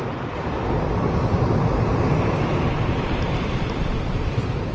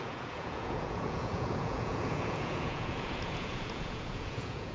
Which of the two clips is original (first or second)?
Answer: first